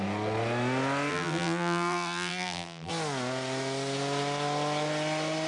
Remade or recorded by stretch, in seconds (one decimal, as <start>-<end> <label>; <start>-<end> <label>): 0.0-1.1 recorded; 1.1-2.9 remade; 2.9-5.5 recorded